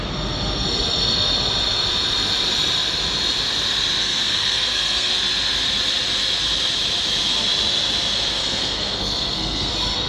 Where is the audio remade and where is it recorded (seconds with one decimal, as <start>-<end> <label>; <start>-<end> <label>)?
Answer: 0.0-4.0 recorded; 4.0-5.1 remade; 5.1-8.4 recorded; 8.4-9.7 remade; 9.7-10.1 recorded